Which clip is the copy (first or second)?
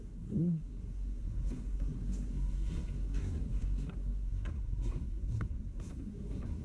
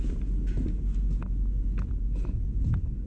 first